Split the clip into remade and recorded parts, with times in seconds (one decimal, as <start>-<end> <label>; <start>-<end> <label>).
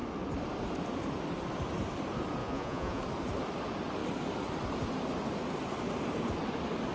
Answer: 0.0-2.4 recorded; 2.4-3.0 remade; 3.0-6.9 recorded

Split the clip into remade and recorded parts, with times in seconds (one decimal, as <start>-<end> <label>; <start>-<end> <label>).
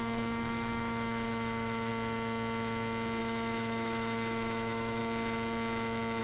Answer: 0.0-1.9 remade; 1.9-3.2 recorded; 3.2-5.0 remade; 5.0-6.2 recorded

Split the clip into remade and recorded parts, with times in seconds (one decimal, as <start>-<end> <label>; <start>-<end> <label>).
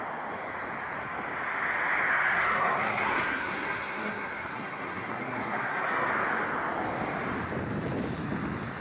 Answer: 0.0-2.1 recorded; 2.1-6.1 remade; 6.1-8.8 recorded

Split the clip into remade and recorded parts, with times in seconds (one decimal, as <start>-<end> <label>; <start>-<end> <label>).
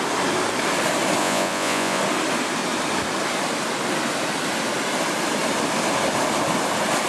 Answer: 0.0-1.2 recorded; 1.2-2.0 remade; 2.0-7.1 recorded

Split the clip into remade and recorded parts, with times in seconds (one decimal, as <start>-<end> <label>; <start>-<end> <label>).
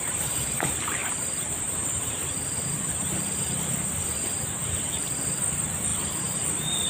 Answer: 0.0-1.0 recorded; 1.0-1.5 remade; 1.5-5.9 recorded; 5.9-6.9 remade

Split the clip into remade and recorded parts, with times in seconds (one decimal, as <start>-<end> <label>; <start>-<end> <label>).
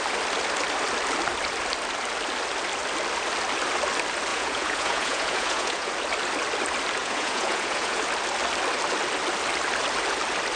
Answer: 0.0-4.3 recorded; 4.3-5.9 remade; 5.9-7.0 recorded; 7.0-8.0 remade; 8.0-10.6 recorded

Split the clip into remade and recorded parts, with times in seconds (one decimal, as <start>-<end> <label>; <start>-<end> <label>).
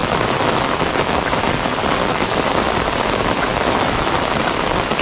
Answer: 0.0-1.5 remade; 1.5-2.0 recorded; 2.0-2.5 remade; 2.5-3.5 recorded; 3.5-4.1 remade; 4.1-5.0 recorded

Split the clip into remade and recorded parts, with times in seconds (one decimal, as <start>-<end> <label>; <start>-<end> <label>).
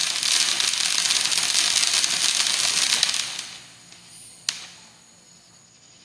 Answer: 0.0-6.0 recorded